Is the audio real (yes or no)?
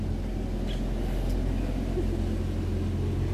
yes